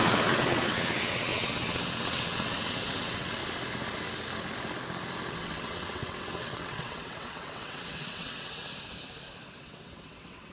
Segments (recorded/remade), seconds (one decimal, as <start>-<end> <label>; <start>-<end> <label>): 0.0-3.4 remade; 3.4-5.3 recorded; 5.3-8.6 remade; 8.6-9.6 recorded; 9.6-10.5 remade